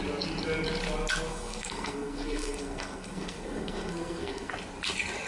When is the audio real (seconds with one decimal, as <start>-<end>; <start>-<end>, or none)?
0.0-1.3; 4.5-5.3